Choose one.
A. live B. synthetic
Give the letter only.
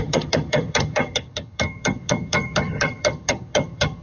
B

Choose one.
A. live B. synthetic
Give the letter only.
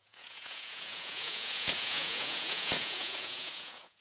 B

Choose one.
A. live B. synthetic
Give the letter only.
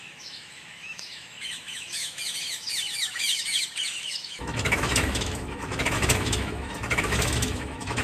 B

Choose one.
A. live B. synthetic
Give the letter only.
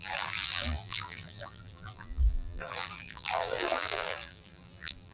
B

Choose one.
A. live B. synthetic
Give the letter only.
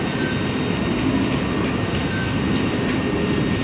A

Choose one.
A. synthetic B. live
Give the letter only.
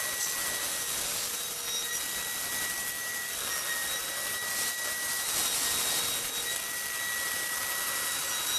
B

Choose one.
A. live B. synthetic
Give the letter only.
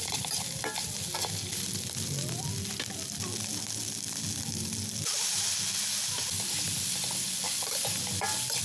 A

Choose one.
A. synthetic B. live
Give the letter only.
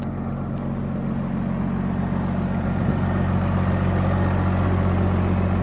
B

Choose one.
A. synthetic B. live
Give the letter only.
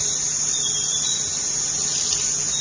B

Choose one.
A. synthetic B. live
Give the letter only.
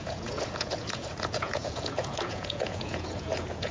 A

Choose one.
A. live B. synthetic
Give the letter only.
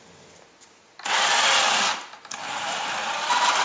A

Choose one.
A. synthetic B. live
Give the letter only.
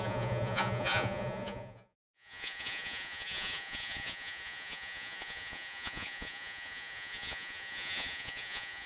A